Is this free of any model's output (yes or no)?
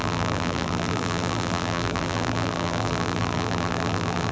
no